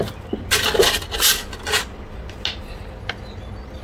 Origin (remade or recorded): recorded